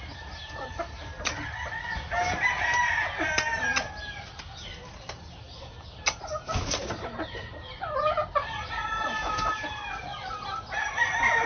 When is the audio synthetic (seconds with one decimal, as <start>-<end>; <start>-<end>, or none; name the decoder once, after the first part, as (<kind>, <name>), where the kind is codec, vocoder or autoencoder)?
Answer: none